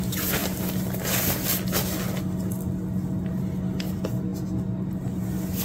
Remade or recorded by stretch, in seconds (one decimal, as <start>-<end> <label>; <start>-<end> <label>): 0.0-5.6 recorded